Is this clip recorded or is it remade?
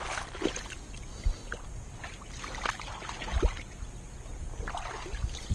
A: recorded